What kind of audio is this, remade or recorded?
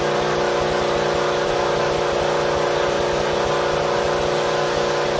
recorded